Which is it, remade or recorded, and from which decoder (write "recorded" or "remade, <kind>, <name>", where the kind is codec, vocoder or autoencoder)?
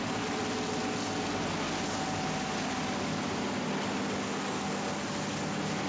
recorded